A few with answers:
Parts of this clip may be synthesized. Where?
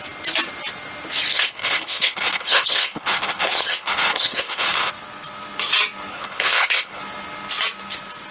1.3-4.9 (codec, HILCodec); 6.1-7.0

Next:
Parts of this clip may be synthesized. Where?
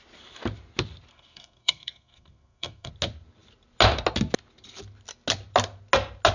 1.1-2.9 (codec, SNAC)